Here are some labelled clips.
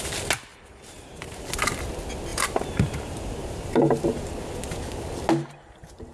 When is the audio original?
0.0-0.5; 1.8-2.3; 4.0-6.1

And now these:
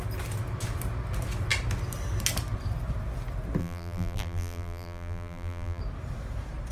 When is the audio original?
0.0-3.6; 5.8-6.7

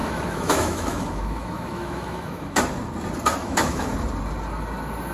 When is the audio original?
2.6-3.4; 3.9-5.1

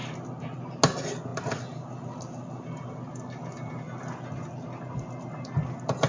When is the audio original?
0.0-6.1